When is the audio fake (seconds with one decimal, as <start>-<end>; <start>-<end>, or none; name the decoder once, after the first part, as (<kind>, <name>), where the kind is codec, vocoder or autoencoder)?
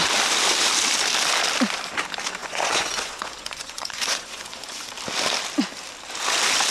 2.4-4.8 (vocoder, Vocos)